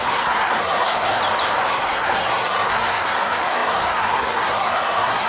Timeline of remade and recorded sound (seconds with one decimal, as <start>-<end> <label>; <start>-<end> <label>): 0.0-1.2 remade; 1.2-1.7 recorded; 1.7-5.3 remade